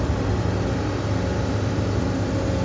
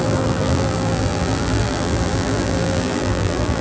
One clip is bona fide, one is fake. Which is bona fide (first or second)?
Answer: first